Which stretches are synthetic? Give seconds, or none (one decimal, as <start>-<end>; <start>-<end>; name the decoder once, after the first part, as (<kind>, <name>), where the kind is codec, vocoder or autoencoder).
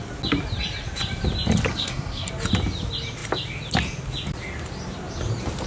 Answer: 1.7-2.3 (codec, SNAC)